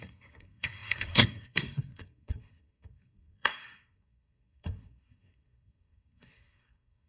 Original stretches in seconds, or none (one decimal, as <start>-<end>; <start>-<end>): none

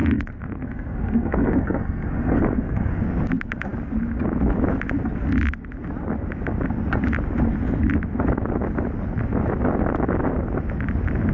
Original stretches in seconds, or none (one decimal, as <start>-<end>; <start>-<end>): 3.0-11.3